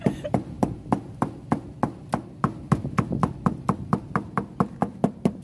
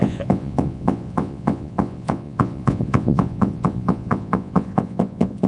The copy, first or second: second